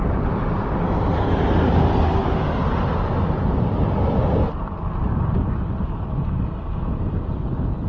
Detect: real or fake real